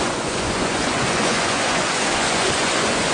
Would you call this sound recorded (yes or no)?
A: no